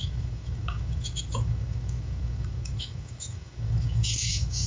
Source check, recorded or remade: remade